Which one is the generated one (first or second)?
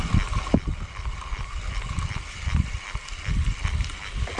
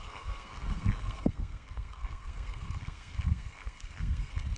second